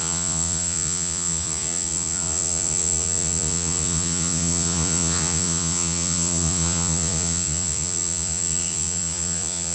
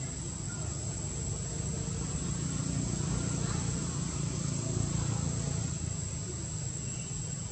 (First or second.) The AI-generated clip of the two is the first